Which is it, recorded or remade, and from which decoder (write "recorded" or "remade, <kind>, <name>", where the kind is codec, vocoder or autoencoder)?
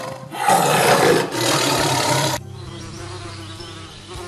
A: remade, vocoder, BigVGAN v2